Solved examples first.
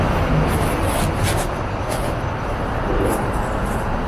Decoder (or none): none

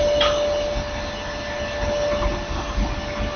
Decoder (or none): none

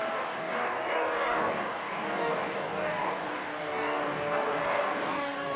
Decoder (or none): codec, DAC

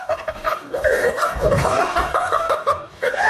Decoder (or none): codec, DAC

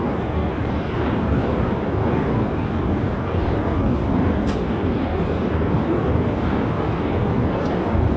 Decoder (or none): codec, DAC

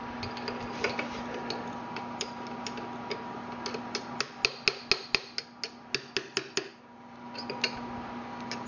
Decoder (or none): none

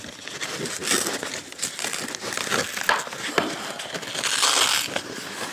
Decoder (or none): none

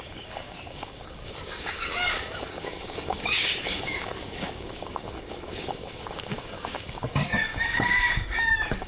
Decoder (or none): codec, DAC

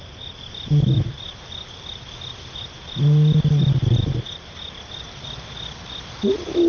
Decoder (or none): none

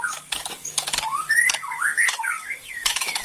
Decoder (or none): codec, DAC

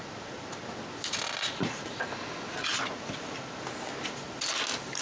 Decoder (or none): none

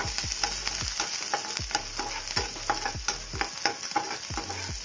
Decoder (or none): none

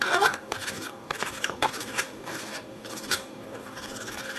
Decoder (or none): codec, DAC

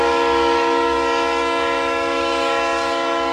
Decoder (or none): codec, DAC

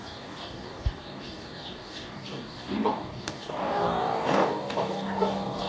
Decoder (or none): codec, DAC